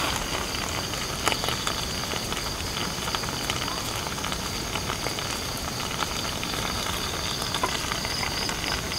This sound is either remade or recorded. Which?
recorded